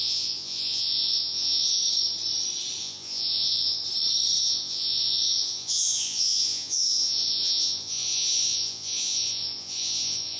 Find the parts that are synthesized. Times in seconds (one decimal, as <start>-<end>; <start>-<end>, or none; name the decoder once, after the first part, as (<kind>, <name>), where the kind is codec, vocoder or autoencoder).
0.0-1.8 (vocoder, Vocos); 2.8-3.8; 4.4-10.4